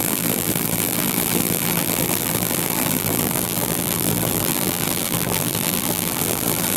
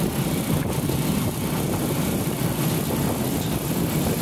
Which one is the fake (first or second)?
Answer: first